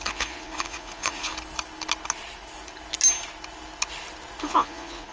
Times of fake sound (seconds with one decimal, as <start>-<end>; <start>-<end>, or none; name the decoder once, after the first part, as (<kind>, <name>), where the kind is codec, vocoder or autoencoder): 0.0-1.3 (vocoder, Vocos); 4.4-5.1

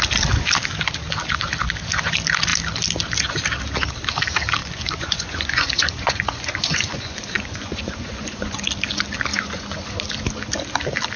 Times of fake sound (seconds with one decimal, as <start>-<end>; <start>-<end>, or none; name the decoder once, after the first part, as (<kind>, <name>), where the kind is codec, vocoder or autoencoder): 4.6-8.6 (vocoder, Vocos); 9.3-9.9

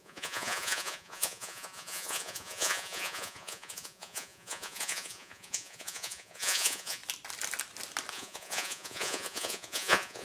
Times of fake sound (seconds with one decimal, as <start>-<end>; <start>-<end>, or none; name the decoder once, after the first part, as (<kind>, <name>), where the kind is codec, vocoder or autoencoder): 0.0-7.0 (vocoder, Vocos); 8.1-10.2

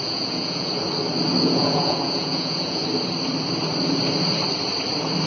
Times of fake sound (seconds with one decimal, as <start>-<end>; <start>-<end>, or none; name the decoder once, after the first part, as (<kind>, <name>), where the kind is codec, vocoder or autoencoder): 0.0-0.7 (vocoder, Vocos); 1.4-2.8

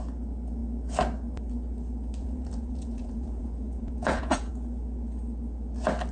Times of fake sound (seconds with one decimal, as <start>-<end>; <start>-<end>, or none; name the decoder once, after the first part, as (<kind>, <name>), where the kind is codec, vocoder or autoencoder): 2.2-4.5 (vocoder, Vocos)